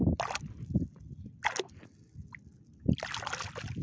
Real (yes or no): yes